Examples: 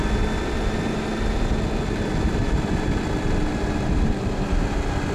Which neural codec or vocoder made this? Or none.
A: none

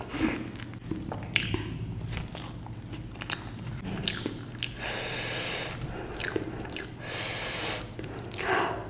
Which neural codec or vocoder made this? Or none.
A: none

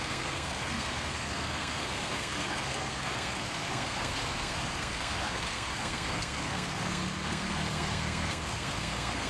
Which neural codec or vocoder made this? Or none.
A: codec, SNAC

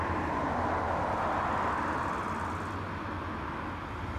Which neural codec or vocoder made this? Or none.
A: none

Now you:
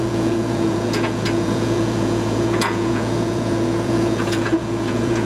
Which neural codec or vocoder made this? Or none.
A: vocoder, Vocos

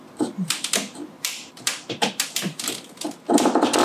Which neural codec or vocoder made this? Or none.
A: vocoder, BigVGAN v2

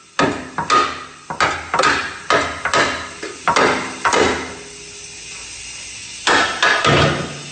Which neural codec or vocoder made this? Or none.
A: none